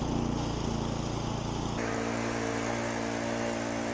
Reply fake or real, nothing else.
real